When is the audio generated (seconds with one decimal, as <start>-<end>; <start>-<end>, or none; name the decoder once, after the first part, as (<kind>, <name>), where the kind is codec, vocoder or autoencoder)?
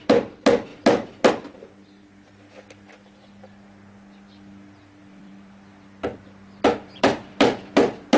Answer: 5.0-7.7 (vocoder, BigVGAN v2)